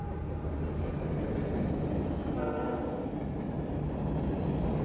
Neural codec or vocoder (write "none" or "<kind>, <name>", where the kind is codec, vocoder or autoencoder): none